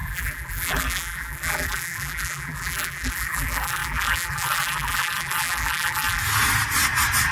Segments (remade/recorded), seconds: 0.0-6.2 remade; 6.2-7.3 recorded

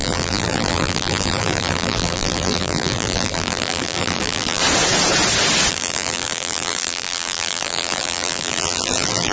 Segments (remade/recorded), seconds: 0.0-4.6 remade; 4.6-5.7 recorded; 5.7-9.3 remade